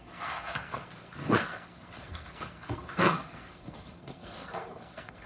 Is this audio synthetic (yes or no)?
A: yes